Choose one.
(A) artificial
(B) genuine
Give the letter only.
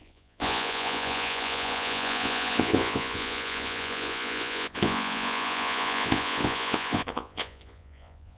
A